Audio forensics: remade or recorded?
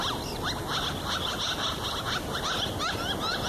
recorded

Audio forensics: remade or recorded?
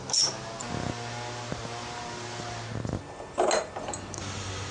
recorded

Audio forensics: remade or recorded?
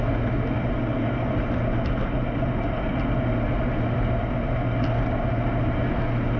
recorded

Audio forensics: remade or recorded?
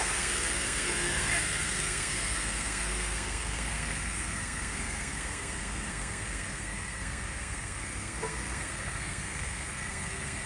remade